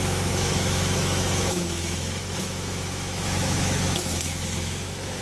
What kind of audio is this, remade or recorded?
remade